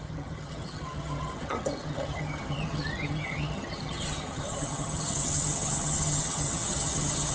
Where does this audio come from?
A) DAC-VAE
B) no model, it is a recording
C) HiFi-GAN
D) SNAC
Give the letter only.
C